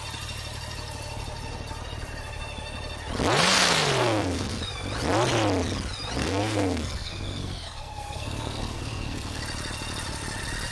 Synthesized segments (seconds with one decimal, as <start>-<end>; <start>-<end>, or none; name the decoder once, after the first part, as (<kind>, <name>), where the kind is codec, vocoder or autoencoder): 4.0-4.6 (codec, SNAC); 6.2-9.4